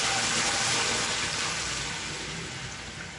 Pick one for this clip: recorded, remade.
recorded